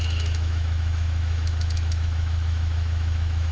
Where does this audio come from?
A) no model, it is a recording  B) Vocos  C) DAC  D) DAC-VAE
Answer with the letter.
D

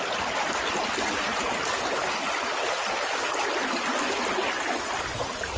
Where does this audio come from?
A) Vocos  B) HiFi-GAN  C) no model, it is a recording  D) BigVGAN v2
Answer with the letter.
C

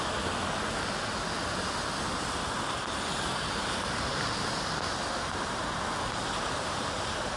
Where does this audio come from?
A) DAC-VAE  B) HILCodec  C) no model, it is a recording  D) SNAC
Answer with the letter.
C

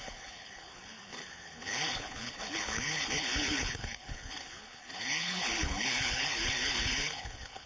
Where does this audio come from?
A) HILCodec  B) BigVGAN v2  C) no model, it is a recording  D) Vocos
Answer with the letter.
A